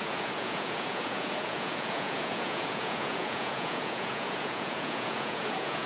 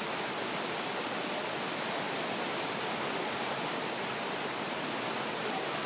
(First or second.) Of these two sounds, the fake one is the first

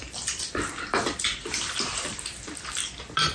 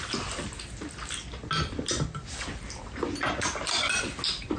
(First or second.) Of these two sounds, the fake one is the first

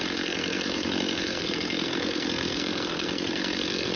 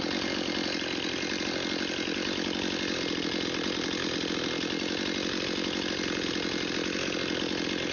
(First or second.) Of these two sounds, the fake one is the first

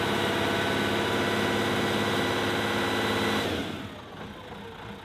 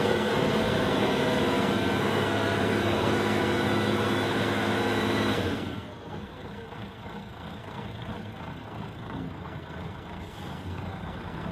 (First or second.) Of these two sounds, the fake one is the second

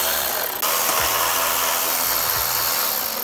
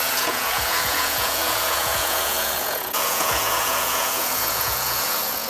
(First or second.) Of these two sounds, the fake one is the second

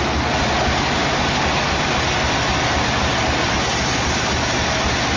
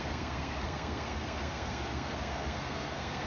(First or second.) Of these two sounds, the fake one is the second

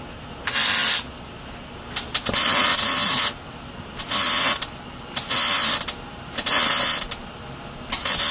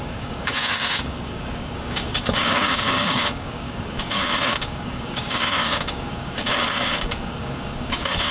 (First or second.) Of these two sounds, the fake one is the second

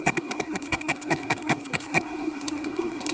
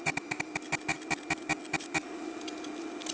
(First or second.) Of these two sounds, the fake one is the first